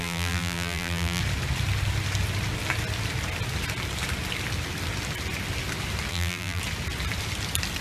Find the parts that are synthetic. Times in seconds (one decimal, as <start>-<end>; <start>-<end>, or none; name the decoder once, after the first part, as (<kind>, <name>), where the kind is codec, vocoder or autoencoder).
0.0-1.2 (vocoder, BigVGAN v2); 6.1-6.6